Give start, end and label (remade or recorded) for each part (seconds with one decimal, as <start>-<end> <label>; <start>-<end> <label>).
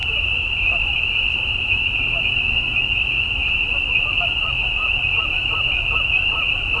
0.0-2.2 remade; 2.2-6.8 recorded